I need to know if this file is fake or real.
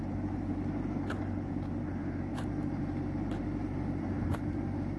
fake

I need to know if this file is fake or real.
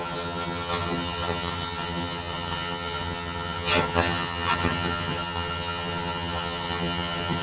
fake